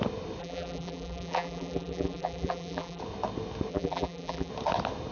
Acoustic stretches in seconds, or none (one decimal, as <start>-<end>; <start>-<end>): 0.0-0.4; 3.0-3.7; 4.5-5.1